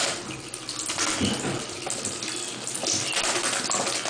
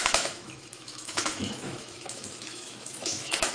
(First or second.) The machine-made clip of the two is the second